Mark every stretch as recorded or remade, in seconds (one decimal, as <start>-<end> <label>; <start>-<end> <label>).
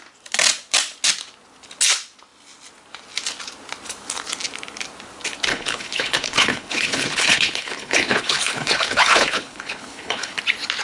0.0-5.5 recorded; 5.5-10.4 remade; 10.4-10.8 recorded